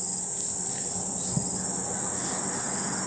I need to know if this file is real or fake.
real